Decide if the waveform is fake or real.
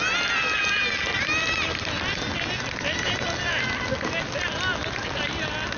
real